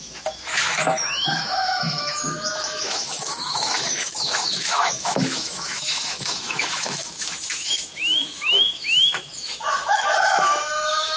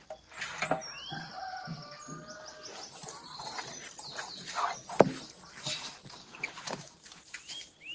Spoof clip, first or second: first